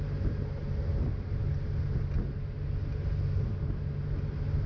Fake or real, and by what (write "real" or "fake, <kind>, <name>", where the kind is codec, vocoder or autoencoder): real